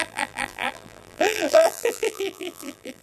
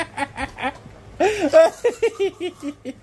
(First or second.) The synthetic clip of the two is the first